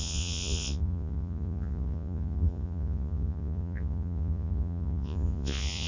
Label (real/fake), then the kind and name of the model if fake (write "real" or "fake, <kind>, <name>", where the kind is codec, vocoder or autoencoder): fake, vocoder, Vocos